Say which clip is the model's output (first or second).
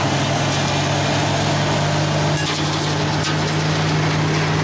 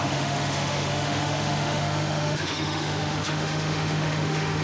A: second